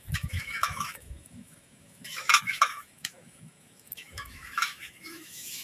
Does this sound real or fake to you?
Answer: fake